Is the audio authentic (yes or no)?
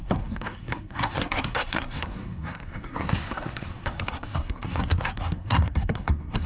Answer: no